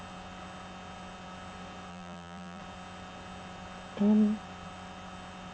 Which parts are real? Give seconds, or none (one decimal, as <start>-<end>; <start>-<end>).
0.0-1.9; 2.6-5.5